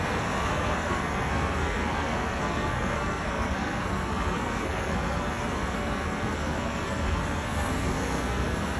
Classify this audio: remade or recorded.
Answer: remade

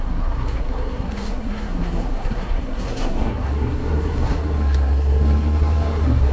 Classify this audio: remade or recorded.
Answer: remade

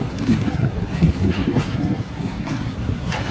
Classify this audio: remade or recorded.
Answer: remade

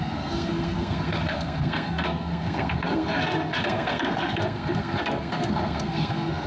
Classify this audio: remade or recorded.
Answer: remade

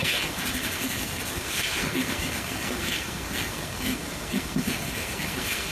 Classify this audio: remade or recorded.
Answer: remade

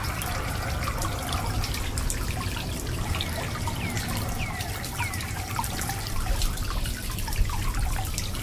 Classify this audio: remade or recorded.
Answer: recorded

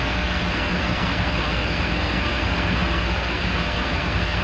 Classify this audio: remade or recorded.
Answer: remade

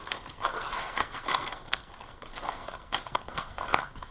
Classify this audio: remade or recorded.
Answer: remade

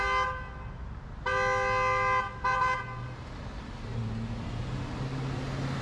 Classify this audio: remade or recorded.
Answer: recorded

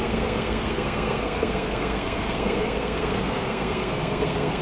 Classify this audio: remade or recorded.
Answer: remade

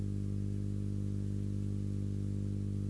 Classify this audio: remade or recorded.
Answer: recorded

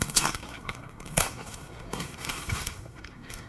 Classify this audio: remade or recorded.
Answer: remade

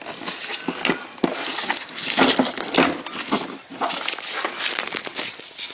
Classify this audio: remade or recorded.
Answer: recorded